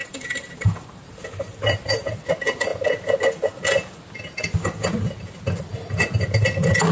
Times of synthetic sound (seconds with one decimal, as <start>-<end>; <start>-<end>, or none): 0.0-2.2